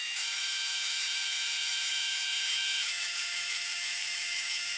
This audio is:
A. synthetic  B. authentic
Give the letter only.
A